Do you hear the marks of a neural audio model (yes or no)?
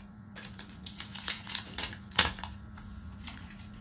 yes